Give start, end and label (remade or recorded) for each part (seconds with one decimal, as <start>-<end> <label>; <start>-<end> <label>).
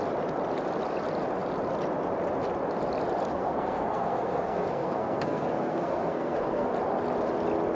0.0-3.3 recorded; 3.3-6.7 remade; 6.7-7.7 recorded